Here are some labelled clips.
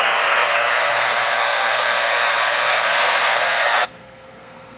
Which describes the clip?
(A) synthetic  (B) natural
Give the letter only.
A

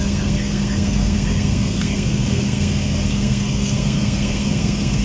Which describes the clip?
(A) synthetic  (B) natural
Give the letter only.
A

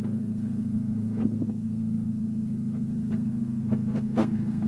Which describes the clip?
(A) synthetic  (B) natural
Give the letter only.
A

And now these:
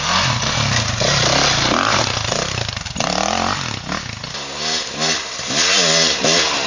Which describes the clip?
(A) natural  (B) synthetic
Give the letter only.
A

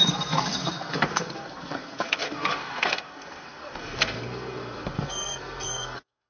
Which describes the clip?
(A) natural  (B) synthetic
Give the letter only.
B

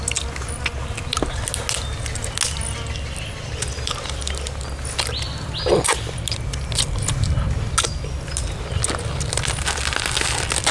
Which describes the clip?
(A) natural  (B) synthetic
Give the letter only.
A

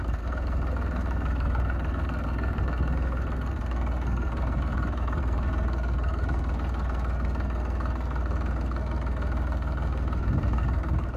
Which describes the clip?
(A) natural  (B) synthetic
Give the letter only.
B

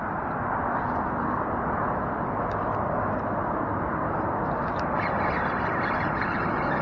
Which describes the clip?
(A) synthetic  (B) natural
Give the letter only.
B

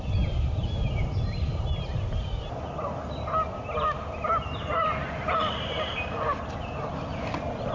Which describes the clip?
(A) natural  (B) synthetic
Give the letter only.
A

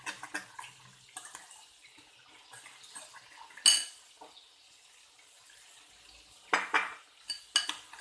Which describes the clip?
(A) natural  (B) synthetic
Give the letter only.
A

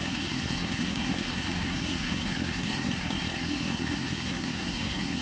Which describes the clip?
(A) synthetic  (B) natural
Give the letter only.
A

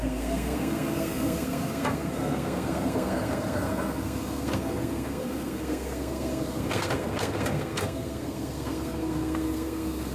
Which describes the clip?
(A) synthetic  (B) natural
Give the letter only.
A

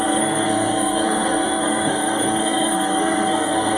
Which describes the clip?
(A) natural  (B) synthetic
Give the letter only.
B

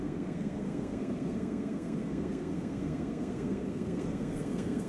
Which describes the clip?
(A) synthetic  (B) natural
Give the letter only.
A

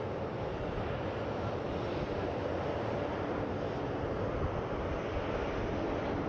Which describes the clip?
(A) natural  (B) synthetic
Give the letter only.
A